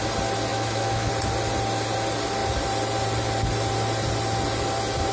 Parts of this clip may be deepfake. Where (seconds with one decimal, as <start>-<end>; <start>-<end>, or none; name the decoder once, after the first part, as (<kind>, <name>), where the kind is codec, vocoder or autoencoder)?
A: 0.5-1.1 (autoencoder, DAC-VAE)